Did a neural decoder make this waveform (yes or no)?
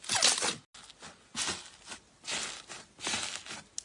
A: no